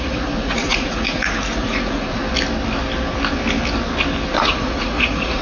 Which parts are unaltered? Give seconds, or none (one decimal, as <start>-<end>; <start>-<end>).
2.2-4.3